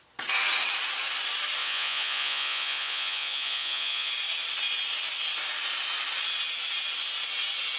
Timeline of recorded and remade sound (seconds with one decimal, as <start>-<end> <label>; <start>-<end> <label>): 0.0-1.6 recorded; 1.6-4.1 remade; 4.1-7.8 recorded

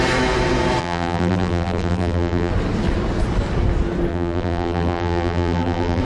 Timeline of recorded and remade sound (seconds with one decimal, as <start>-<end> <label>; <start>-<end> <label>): 0.0-0.8 recorded; 0.8-2.5 remade; 2.5-4.1 recorded; 4.1-6.0 remade

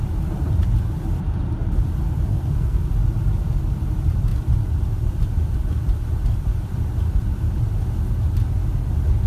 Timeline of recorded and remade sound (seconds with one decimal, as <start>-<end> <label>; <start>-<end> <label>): 0.0-2.3 recorded; 2.3-2.9 remade; 2.9-9.3 recorded

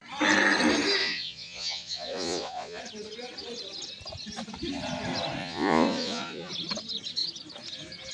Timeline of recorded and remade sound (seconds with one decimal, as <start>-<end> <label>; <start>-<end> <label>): 0.0-1.0 recorded; 1.0-2.8 remade; 2.8-5.4 recorded; 5.4-6.5 remade; 6.5-8.1 recorded